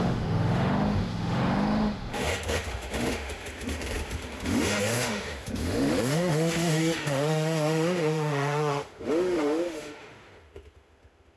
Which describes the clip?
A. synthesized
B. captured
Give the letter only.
A